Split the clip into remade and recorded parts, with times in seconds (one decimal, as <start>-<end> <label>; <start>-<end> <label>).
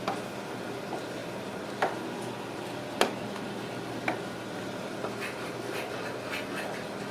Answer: 0.0-7.1 recorded